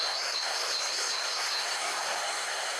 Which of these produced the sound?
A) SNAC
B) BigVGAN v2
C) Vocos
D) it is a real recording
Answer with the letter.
A